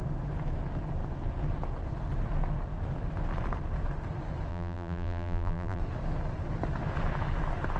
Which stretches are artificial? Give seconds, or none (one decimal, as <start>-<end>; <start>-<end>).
4.5-5.8